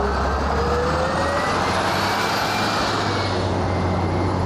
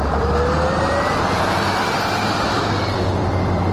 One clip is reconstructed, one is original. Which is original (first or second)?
first